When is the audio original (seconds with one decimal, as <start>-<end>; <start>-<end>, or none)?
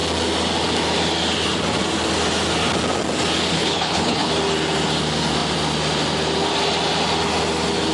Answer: 0.0-3.5; 4.3-7.9